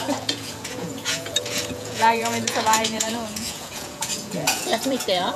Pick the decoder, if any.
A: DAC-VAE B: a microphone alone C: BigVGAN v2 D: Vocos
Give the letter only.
D